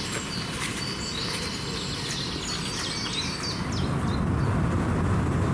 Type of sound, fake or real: real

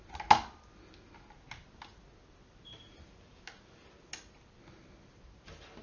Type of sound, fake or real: real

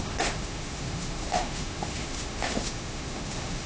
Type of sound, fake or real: fake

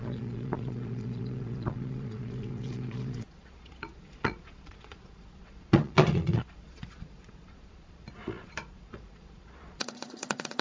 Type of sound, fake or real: fake